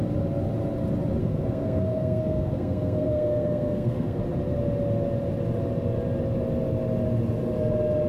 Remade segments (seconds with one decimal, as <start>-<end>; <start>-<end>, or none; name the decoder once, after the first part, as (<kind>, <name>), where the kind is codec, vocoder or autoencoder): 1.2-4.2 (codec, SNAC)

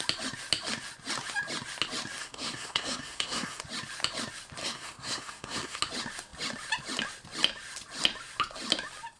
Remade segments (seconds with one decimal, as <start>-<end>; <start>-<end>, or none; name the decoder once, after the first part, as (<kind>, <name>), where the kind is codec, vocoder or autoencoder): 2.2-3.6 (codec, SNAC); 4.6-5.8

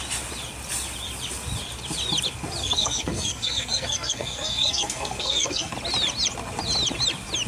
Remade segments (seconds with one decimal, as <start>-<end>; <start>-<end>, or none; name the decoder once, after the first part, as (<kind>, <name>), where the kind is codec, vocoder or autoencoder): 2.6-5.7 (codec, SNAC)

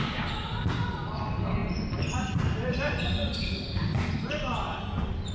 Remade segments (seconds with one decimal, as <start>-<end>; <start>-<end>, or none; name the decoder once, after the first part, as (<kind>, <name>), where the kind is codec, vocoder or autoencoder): none

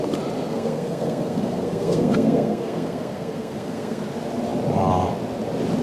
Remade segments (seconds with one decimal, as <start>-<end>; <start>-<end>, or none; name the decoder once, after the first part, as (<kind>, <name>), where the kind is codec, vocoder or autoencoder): 0.5-4.0 (codec, SNAC)

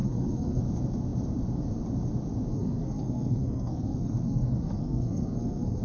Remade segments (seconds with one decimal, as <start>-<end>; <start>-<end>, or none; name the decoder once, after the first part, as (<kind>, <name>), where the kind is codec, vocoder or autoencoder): 0.0-0.6 (codec, SNAC); 2.5-5.8

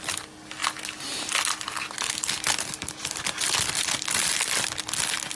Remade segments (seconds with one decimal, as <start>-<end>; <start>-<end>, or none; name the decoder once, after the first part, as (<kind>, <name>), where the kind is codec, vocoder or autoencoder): none

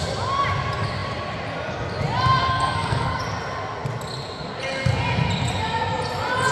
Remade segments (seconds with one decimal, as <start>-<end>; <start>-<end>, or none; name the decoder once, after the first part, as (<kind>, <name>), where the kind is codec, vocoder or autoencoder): 2.4-3.2 (codec, SNAC)